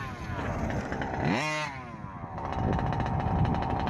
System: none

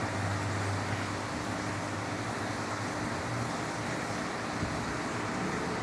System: none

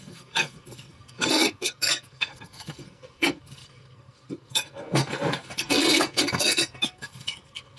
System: codec, SNAC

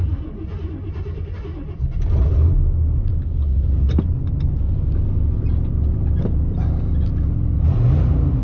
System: none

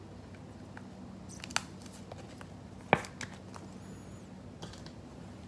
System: none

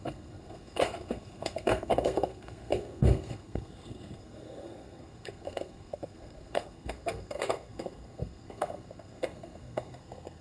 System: codec, SNAC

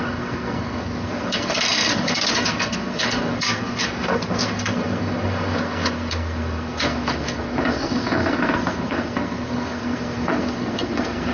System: codec, SNAC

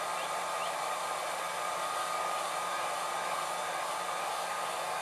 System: none